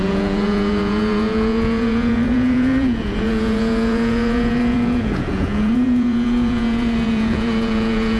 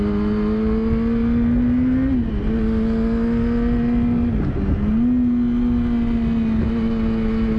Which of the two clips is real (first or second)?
second